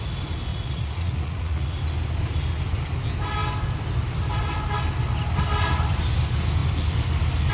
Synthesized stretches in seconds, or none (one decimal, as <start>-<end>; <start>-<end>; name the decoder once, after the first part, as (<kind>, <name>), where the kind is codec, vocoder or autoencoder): 0.5-1.8 (vocoder, Vocos)